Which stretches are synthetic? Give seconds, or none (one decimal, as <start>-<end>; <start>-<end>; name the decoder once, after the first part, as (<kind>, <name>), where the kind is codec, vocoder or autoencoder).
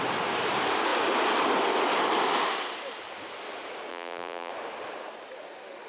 3.9-4.5 (vocoder, BigVGAN v2)